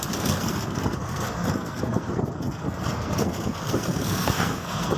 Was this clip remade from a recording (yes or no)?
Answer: yes